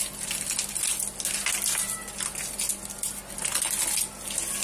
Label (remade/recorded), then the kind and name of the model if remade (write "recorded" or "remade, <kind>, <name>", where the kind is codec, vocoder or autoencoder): recorded